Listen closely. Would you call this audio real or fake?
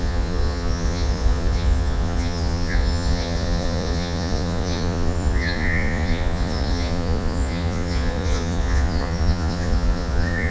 fake